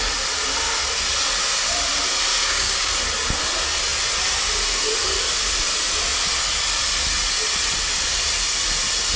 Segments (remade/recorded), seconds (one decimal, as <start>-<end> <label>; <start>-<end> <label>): 0.0-2.3 recorded; 2.3-2.9 remade; 2.9-9.2 recorded